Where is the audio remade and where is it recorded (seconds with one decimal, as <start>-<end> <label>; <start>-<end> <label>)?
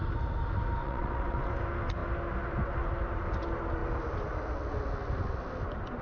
0.0-0.8 recorded; 0.8-1.5 remade; 1.5-6.0 recorded